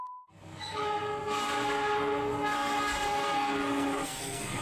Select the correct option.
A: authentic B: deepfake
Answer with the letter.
B